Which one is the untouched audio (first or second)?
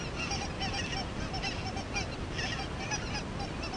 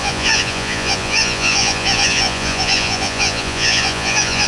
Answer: first